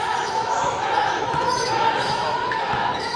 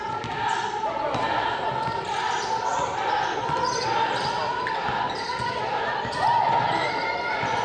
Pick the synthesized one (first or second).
first